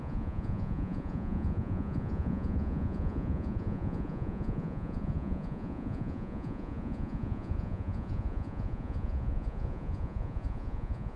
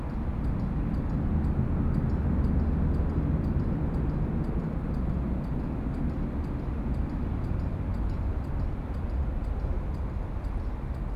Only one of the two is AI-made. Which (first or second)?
first